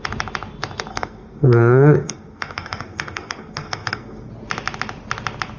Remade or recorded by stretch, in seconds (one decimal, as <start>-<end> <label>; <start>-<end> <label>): 0.0-0.9 recorded; 0.9-4.3 remade; 4.3-5.6 recorded